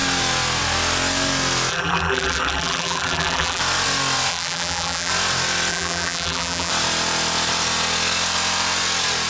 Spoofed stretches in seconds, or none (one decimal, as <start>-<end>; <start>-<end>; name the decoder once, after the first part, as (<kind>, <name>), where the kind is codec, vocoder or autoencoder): 1.7-3.6 (vocoder, BigVGAN v2); 4.3-5.1; 5.7-6.7